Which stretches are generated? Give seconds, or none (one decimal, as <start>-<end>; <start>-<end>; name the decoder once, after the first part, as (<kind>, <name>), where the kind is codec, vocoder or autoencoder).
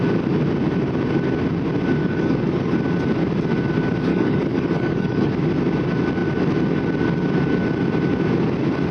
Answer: 2.0-2.7 (codec, DAC); 4.1-5.3